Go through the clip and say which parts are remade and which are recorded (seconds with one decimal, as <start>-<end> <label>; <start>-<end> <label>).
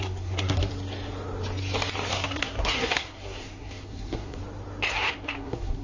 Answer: 0.0-0.7 remade; 0.7-2.1 recorded; 2.1-4.4 remade; 4.4-4.9 recorded; 4.9-5.8 remade